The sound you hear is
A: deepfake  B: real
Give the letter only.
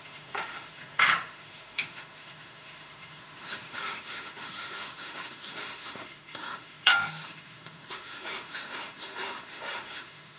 A